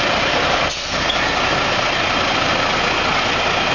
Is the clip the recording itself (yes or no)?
yes